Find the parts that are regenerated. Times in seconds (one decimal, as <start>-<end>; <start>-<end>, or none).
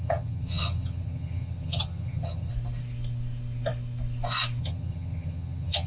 0.0-2.5; 4.6-5.9